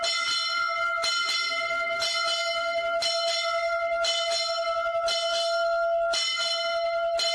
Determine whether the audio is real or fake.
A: real